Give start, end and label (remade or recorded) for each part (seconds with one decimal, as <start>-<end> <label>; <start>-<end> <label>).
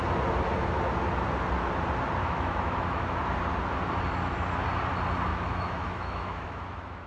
0.0-2.2 recorded; 2.2-3.2 remade; 3.2-5.3 recorded; 5.3-7.1 remade